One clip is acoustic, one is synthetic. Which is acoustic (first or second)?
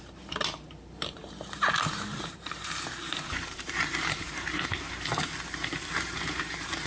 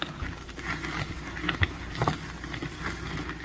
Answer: second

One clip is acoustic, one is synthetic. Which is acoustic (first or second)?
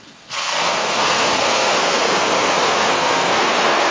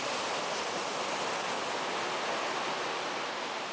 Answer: second